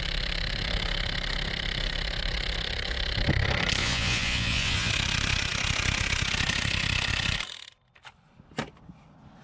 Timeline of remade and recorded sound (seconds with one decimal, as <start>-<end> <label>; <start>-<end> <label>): 0.0-3.8 recorded; 3.8-4.9 remade; 4.9-9.4 recorded